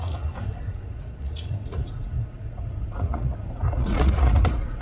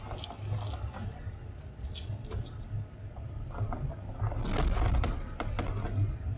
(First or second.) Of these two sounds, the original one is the second